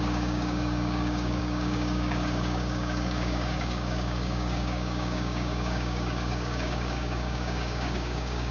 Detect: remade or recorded remade